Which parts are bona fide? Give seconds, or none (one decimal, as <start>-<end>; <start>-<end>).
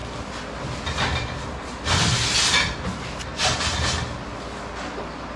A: 0.0-5.4